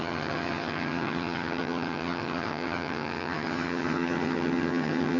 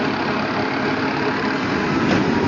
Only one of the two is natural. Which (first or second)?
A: second